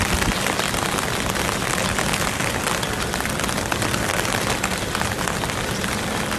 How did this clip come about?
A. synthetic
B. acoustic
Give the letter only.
B